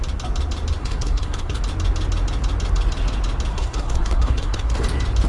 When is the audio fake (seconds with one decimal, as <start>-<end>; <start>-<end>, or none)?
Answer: 0.8-1.6; 3.5-4.8